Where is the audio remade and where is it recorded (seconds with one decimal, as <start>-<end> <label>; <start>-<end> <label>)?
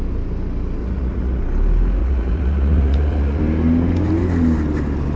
0.0-0.8 recorded; 0.8-1.4 remade; 1.4-2.0 recorded; 2.0-3.4 remade; 3.4-5.2 recorded